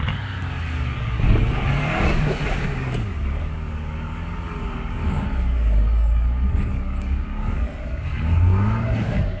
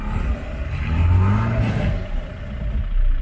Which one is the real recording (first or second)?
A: second